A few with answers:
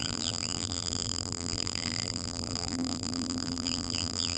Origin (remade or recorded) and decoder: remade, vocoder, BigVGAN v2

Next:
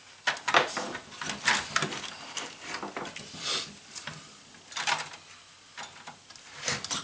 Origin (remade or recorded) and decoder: recorded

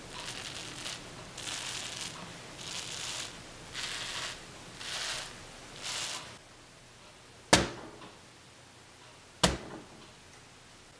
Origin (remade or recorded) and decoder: recorded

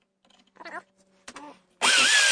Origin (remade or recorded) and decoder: recorded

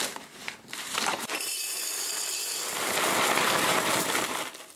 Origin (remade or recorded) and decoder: remade, vocoder, BigVGAN v2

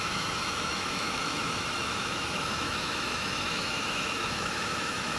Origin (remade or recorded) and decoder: remade, autoencoder, DAC-VAE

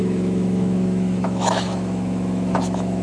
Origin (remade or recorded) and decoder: remade, autoencoder, DAC-VAE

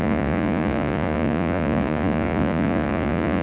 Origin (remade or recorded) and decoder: remade, vocoder, Vocos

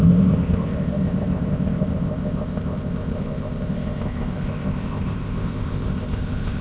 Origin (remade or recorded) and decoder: remade, codec, ZipCodec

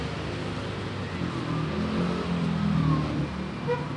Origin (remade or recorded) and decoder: recorded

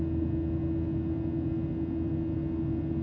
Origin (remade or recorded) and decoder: recorded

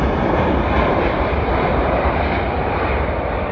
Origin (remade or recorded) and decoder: remade, vocoder, BigVGAN v2